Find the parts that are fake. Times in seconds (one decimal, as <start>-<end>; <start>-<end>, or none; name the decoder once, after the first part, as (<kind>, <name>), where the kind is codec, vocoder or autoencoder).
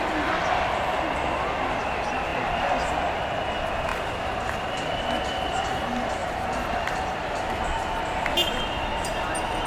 6.2-8.0 (vocoder, BigVGAN v2); 8.9-9.7